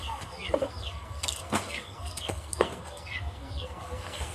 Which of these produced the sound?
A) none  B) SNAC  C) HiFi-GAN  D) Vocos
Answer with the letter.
B